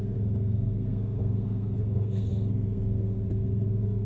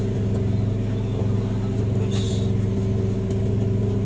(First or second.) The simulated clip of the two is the first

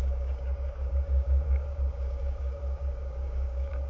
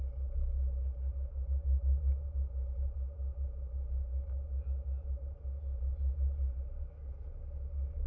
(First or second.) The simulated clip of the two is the first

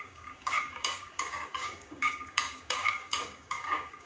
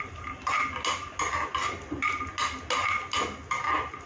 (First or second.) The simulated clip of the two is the first